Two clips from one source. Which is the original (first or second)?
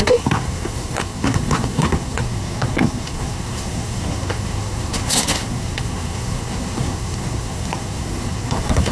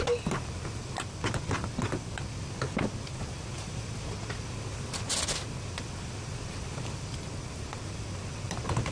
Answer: second